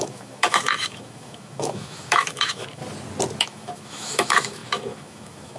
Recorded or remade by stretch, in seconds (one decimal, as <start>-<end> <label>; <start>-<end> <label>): 0.0-2.8 remade; 2.8-3.4 recorded; 3.4-5.6 remade